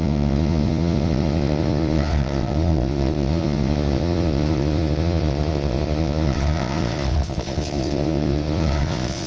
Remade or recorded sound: remade